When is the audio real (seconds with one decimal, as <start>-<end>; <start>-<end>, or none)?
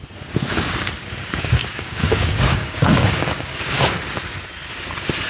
0.0-1.0; 4.2-5.3